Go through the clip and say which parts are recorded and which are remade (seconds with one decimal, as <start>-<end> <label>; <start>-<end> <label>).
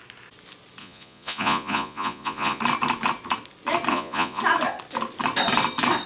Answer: 0.0-0.8 recorded; 0.8-2.6 remade; 2.6-3.9 recorded; 3.9-4.4 remade; 4.4-6.1 recorded